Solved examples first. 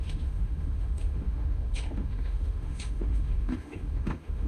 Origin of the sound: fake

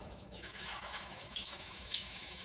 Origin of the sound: fake